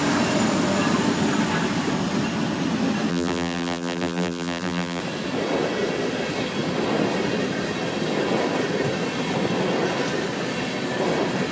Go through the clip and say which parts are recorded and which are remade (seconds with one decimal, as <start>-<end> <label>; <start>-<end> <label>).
0.0-3.1 recorded; 3.1-5.0 remade; 5.0-11.5 recorded